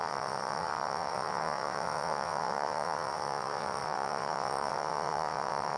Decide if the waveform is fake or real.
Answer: fake